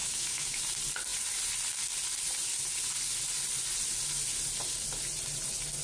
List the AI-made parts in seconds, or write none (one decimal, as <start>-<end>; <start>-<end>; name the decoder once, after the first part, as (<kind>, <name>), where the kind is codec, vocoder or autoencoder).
0.0-0.6 (autoencoder, DAC-VAE)